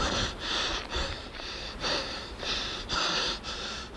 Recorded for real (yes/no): no